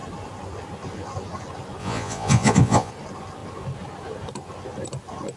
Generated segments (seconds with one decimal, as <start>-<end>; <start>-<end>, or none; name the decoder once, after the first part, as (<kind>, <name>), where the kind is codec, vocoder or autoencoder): 1.8-2.9 (vocoder, Vocos)